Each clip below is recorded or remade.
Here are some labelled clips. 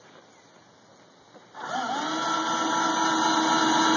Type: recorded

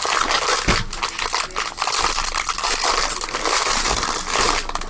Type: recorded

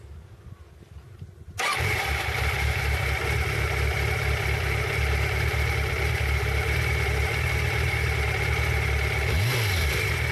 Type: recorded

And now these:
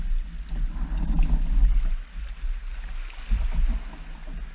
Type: recorded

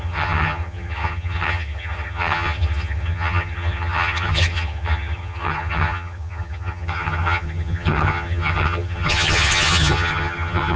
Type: remade